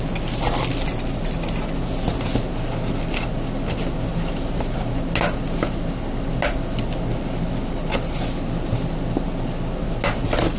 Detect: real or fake real